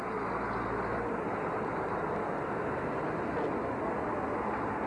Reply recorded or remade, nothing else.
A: recorded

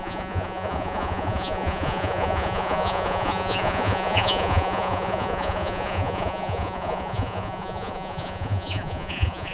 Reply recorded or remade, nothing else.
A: remade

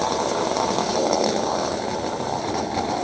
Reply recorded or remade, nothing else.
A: remade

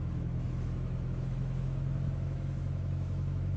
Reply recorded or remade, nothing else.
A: remade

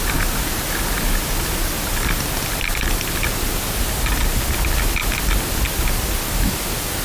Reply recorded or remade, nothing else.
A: recorded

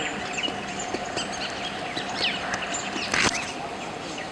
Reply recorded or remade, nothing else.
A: recorded